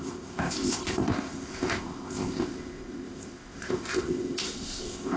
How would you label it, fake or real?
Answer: fake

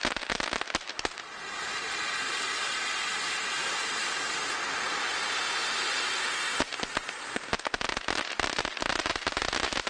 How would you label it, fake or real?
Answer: real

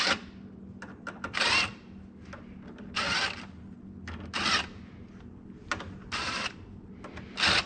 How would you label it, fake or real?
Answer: real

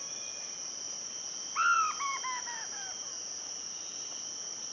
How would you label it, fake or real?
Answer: real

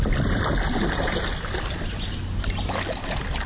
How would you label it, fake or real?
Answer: real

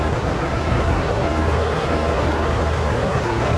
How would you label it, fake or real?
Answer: fake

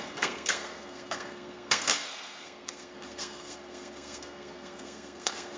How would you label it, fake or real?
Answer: fake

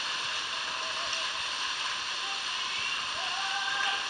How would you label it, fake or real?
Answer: fake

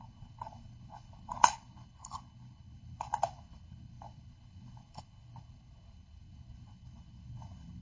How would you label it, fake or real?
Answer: fake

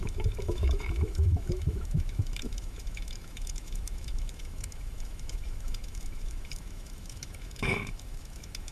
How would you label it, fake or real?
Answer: fake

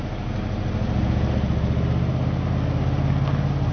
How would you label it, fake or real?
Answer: real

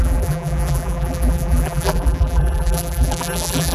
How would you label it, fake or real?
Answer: fake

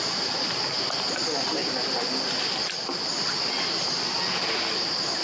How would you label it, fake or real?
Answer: real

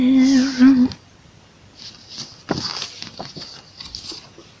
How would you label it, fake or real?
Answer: real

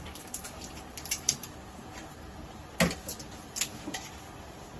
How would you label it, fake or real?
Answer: real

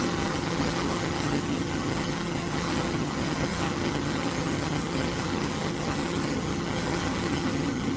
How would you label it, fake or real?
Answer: fake